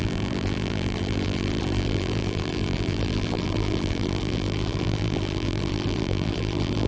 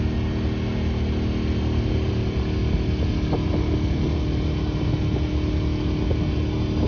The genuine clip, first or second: second